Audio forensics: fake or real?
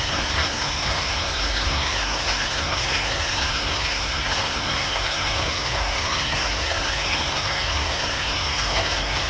fake